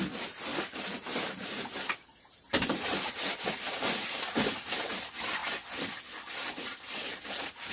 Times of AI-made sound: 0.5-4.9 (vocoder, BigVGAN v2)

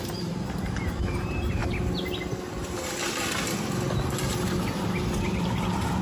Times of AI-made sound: 0.0-1.6 (vocoder, BigVGAN v2); 5.2-6.0

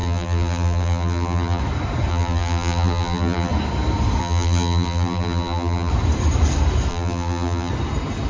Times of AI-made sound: 0.0-1.6 (vocoder, BigVGAN v2); 2.1-3.5; 4.2-5.9; 6.9-7.7